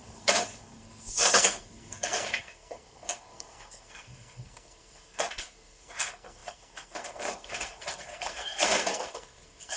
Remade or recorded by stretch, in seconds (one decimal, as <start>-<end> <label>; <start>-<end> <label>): 0.0-9.8 remade